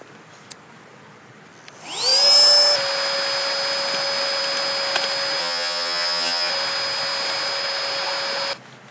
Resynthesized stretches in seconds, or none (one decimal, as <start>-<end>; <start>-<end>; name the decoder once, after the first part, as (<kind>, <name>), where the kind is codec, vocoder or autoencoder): 5.4-6.5 (vocoder, HiFi-GAN)